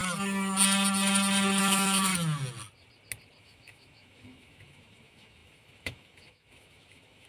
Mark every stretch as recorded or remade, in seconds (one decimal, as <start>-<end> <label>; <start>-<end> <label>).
0.0-1.6 recorded; 1.6-2.1 remade; 2.1-3.4 recorded; 3.4-7.3 remade